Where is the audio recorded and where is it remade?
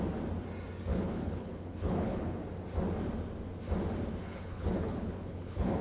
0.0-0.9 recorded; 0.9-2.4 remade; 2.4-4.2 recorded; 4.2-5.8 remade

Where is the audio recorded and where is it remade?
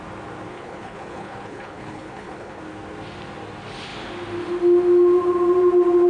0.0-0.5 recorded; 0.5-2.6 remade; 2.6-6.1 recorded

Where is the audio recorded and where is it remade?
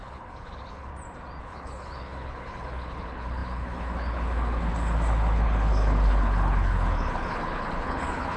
0.0-0.9 remade; 0.9-1.4 recorded; 1.4-8.4 remade